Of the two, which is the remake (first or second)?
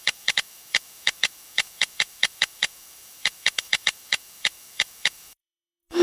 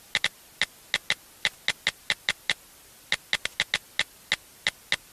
first